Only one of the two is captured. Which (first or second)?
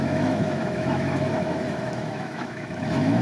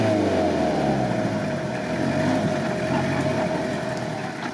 second